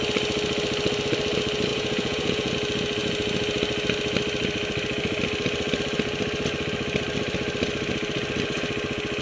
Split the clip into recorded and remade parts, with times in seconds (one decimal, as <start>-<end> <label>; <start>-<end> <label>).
0.0-1.7 recorded; 1.7-2.5 remade; 2.5-9.2 recorded